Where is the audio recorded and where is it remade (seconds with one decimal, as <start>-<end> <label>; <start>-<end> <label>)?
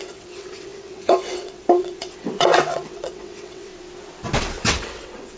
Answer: 0.0-3.7 remade; 3.7-4.4 recorded; 4.4-5.4 remade